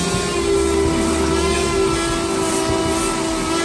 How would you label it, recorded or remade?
recorded